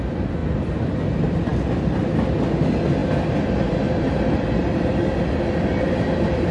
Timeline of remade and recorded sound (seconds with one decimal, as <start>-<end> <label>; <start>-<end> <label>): 0.0-6.5 recorded